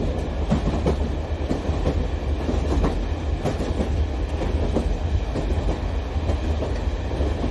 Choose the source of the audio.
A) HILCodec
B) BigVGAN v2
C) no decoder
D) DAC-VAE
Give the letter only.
C